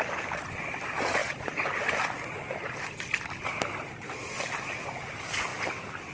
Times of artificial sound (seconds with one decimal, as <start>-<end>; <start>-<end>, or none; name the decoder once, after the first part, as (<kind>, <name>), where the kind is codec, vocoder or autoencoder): 1.2-4.7 (vocoder, BigVGAN v2); 5.5-6.1